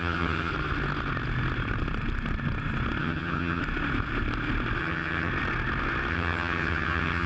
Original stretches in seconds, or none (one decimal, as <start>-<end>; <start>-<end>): 0.5-3.0; 3.6-4.8; 5.3-6.1